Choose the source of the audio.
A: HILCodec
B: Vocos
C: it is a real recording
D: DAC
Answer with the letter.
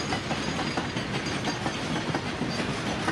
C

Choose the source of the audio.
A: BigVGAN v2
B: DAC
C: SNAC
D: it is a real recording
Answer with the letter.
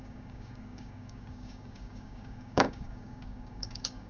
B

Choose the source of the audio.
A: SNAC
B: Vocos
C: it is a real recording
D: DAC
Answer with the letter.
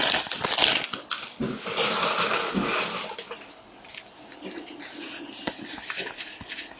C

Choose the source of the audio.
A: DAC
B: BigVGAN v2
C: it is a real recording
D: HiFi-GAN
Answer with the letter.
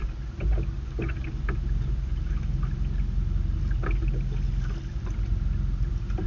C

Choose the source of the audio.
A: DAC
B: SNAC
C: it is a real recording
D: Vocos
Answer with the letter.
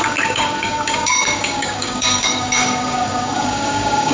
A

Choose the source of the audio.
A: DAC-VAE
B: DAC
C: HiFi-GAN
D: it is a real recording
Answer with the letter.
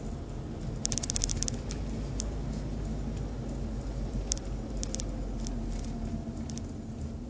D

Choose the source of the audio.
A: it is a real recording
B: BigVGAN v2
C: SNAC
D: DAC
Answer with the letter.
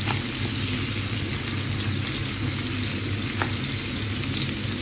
A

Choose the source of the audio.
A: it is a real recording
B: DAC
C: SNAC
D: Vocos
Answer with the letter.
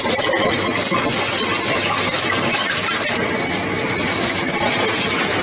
A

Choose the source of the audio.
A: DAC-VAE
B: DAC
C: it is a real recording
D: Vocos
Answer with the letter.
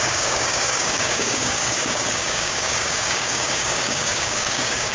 B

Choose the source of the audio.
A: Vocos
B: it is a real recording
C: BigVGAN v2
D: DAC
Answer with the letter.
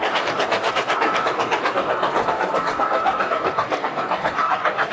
D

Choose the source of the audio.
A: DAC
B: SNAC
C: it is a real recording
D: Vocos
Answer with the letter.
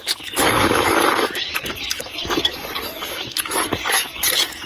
A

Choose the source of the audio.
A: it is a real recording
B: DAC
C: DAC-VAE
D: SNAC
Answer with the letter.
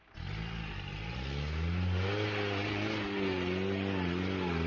A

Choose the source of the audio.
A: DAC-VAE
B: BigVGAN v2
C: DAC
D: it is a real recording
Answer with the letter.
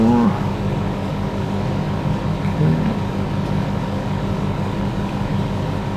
C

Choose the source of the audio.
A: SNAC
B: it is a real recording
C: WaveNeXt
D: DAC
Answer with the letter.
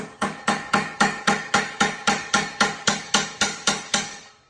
D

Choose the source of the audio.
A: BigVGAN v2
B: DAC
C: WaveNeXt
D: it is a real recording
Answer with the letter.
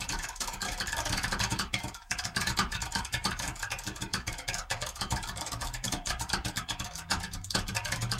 B